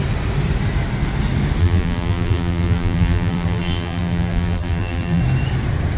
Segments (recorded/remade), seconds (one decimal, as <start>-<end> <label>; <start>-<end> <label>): 0.0-1.6 recorded; 1.6-5.2 remade; 5.2-6.0 recorded